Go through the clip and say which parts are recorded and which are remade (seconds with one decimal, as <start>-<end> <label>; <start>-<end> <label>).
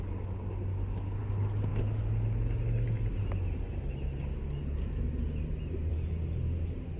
0.0-7.0 recorded